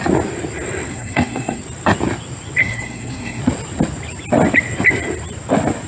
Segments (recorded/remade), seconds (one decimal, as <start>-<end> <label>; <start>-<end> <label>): 0.0-0.9 recorded; 0.9-1.6 remade; 1.6-2.6 recorded; 2.6-3.4 remade; 3.4-5.9 recorded